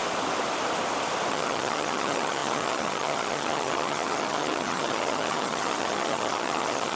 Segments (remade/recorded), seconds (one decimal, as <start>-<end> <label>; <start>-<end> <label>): 0.0-1.3 recorded; 1.3-7.0 remade

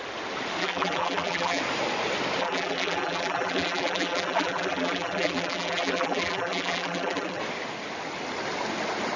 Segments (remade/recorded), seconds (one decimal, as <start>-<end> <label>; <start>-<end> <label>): 0.0-0.6 recorded; 0.6-1.6 remade; 1.6-2.4 recorded; 2.4-7.4 remade; 7.4-9.2 recorded

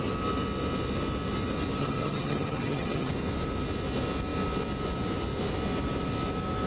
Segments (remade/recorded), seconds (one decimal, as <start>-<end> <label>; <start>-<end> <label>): 0.0-1.8 recorded; 1.8-3.1 remade; 3.1-6.7 recorded

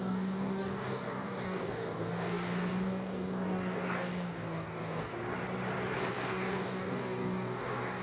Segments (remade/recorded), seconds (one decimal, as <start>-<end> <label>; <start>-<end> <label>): 0.0-5.1 remade; 5.1-6.1 recorded; 6.1-8.0 remade

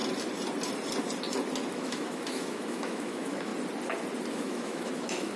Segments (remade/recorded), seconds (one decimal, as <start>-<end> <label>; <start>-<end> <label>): 0.0-1.7 recorded; 1.7-3.5 remade; 3.5-4.3 recorded; 4.3-5.4 remade

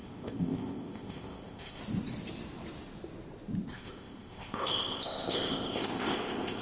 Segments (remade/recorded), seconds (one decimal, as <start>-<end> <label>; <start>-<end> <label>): 0.0-1.8 remade; 1.8-3.7 recorded; 3.7-6.6 remade

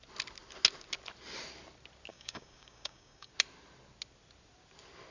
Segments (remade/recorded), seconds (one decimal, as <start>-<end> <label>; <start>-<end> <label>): 0.0-2.1 recorded; 2.1-3.3 remade; 3.3-5.1 recorded